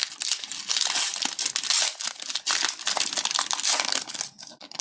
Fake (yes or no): no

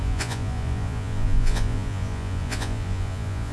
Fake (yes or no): yes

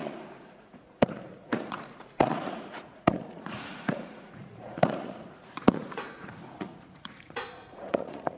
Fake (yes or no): yes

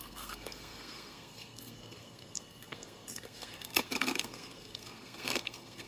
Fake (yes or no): yes